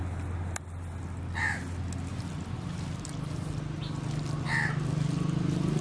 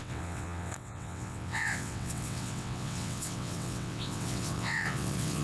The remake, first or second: second